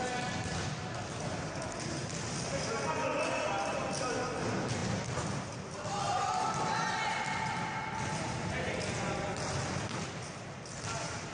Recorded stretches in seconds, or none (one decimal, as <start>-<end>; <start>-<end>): 0.0-11.3